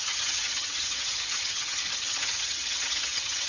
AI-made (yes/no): yes